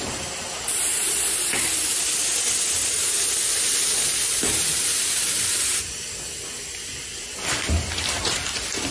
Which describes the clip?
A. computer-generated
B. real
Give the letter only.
B